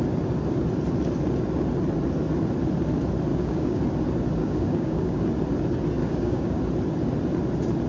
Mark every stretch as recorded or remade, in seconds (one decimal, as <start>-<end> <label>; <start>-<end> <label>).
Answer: 0.0-3.3 recorded; 3.3-3.8 remade; 3.8-4.4 recorded; 4.4-5.2 remade; 5.2-6.0 recorded; 6.0-6.6 remade; 6.6-7.9 recorded